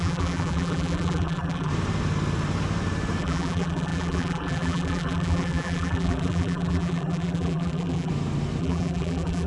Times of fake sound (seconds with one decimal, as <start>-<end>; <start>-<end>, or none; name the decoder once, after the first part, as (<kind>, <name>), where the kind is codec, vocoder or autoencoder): 0.0-1.7 (vocoder, BigVGAN v2); 3.2-8.1; 8.6-9.5